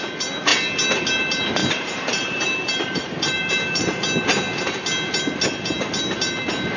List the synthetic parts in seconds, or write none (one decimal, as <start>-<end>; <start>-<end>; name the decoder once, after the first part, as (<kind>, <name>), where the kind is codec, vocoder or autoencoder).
1.6-3.5 (vocoder, BigVGAN v2)